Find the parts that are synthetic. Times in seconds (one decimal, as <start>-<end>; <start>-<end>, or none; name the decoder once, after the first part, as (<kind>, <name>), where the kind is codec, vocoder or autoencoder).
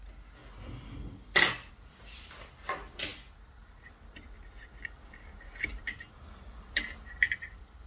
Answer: 0.0-0.4 (vocoder, BigVGAN v2); 1.7-7.9